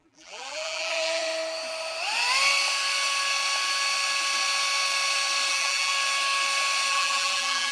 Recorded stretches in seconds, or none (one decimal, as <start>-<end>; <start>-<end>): 1.2-5.5; 5.9-6.9